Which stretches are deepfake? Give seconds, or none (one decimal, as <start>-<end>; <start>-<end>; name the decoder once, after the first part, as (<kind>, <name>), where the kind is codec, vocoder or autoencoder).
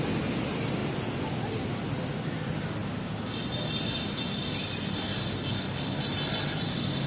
none